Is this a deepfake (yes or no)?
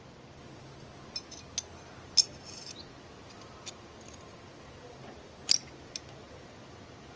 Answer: no